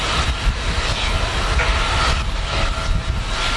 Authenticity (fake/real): real